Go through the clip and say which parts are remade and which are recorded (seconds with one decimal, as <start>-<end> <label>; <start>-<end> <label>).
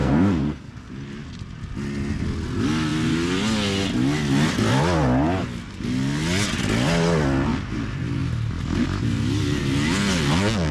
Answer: 0.0-0.7 remade; 0.7-10.7 recorded